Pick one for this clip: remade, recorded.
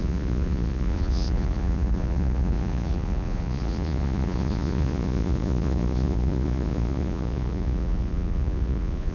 remade